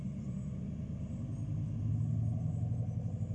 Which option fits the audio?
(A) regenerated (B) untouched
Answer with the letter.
B